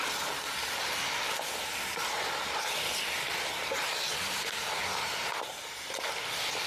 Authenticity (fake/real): real